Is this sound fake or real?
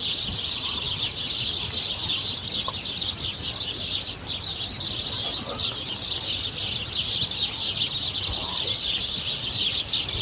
real